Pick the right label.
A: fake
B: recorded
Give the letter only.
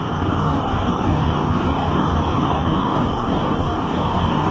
A